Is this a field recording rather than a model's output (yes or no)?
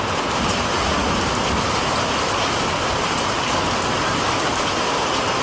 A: yes